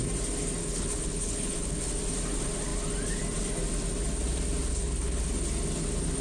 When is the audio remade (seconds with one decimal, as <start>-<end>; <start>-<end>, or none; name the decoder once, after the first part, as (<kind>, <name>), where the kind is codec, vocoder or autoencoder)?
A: 0.6-1.9 (codec, HILCodec); 4.7-5.2